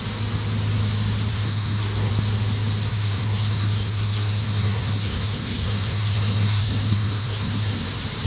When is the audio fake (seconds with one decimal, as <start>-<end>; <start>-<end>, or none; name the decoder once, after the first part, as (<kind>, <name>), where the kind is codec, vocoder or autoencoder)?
1.3-2.1 (codec, SNAC); 2.9-7.9

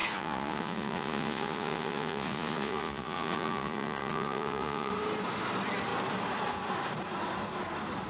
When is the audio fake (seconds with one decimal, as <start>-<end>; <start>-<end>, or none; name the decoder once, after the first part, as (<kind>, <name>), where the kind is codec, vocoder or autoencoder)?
0.0-4.9 (vocoder, Vocos)

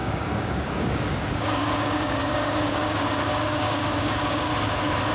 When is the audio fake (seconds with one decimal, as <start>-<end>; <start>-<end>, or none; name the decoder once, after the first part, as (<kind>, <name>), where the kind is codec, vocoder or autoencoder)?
0.0-4.5 (codec, DAC)